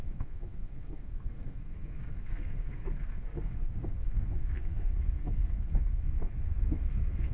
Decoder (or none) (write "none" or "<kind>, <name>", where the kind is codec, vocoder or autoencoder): codec, SNAC